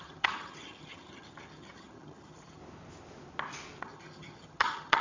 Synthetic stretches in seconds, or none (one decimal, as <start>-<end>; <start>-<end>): 0.0-2.6; 3.8-5.0